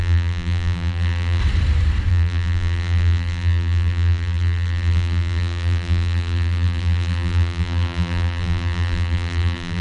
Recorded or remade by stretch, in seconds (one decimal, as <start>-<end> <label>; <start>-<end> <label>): 0.0-1.4 remade; 1.4-2.1 recorded; 2.1-9.8 remade